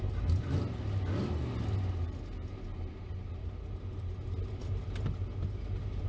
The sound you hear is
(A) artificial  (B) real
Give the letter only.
B